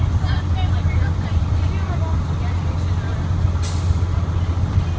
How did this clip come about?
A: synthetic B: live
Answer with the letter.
B